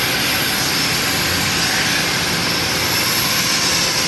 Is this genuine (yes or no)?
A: yes